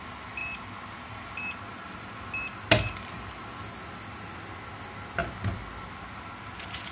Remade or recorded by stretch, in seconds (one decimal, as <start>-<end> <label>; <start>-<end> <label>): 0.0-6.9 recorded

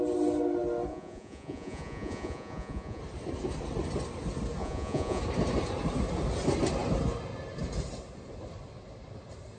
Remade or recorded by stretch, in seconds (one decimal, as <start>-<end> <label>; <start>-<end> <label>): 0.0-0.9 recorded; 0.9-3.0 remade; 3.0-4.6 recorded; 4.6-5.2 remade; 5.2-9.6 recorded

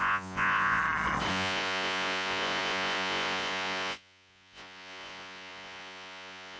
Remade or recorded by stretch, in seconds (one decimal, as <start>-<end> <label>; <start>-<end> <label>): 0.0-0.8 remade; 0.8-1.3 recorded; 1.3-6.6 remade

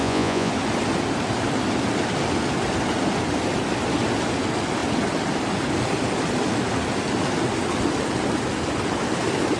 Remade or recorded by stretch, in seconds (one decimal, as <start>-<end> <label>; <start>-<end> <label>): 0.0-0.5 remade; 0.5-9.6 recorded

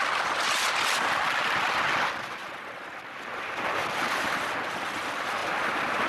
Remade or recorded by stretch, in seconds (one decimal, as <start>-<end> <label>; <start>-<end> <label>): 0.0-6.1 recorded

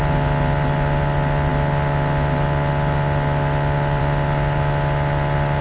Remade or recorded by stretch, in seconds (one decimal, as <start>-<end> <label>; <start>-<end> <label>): 0.0-5.6 recorded